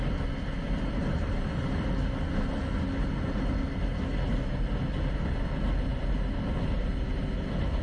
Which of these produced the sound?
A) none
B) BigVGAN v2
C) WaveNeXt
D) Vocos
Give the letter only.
A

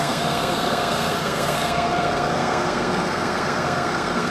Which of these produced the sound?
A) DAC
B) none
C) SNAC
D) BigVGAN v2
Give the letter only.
C